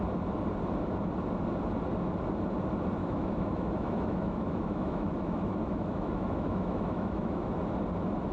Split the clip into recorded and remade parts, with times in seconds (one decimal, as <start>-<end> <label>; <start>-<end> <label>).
0.0-3.0 recorded; 3.0-7.6 remade; 7.6-8.3 recorded